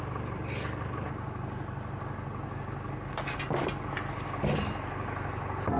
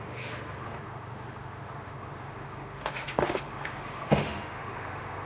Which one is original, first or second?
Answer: first